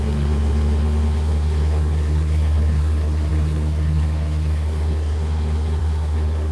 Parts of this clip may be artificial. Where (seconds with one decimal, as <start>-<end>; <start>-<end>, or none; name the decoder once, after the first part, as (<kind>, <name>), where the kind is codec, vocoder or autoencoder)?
0.0-6.5 (codec, SNAC)